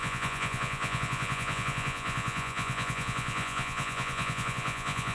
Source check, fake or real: fake